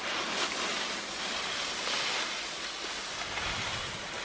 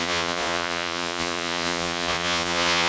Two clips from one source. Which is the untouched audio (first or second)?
first